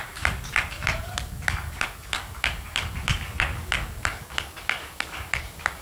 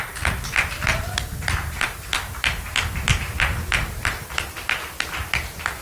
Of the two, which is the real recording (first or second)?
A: second